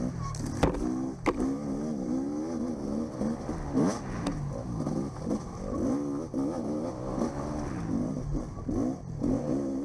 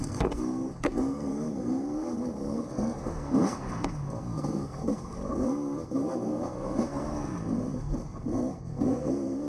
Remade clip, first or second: second